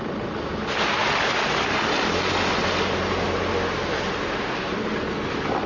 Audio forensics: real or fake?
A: real